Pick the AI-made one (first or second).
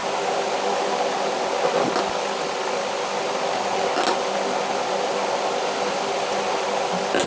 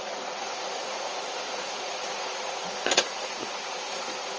second